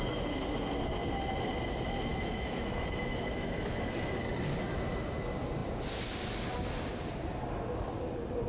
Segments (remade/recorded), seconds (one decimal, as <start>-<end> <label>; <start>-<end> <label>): 0.0-2.1 recorded; 2.1-4.2 remade; 4.2-8.5 recorded

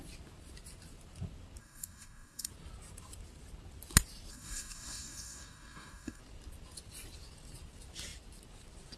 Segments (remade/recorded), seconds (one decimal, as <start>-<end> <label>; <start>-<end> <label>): 0.0-1.6 recorded; 1.6-2.5 remade; 2.5-4.3 recorded; 4.3-6.2 remade; 6.2-9.0 recorded

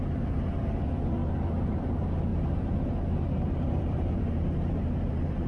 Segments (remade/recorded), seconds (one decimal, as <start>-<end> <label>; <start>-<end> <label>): 0.0-1.2 remade; 1.2-1.7 recorded; 1.7-5.5 remade

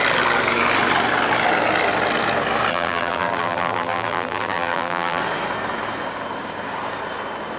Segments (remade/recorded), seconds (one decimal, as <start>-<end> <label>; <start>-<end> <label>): 0.0-2.7 recorded; 2.7-5.2 remade; 5.2-7.6 recorded

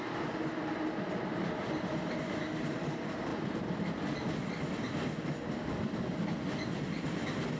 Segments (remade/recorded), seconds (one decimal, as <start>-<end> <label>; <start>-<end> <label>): 0.0-7.6 recorded

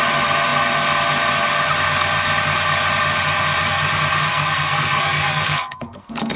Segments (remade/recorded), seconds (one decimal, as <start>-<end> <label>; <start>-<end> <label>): 0.0-4.3 recorded; 4.3-6.4 remade

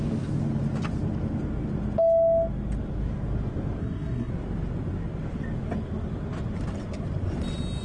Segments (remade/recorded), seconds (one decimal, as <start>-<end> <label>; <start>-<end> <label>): 0.0-3.8 recorded; 3.8-4.3 remade; 4.3-7.8 recorded

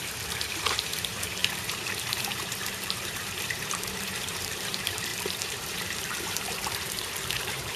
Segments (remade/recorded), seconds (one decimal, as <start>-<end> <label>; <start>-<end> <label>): 0.0-7.8 remade